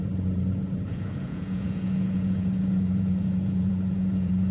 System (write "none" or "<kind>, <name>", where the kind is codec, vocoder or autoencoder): vocoder, Vocos